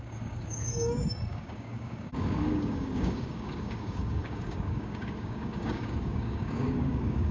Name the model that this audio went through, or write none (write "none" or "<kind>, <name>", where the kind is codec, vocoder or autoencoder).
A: codec, DAC